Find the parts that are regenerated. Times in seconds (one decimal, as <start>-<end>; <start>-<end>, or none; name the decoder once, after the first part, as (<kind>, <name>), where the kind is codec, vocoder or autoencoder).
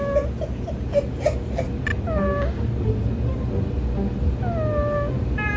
none